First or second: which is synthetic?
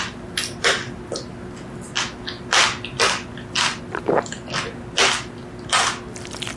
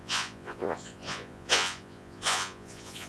second